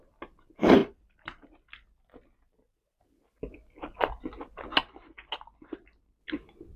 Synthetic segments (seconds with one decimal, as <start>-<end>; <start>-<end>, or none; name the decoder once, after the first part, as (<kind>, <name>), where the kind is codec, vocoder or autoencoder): 0.8-3.0 (vocoder, BigVGAN v2)